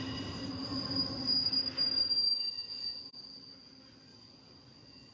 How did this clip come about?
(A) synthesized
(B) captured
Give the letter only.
B